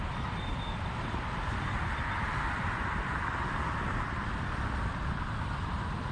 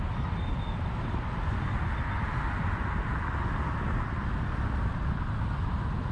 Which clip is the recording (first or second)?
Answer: second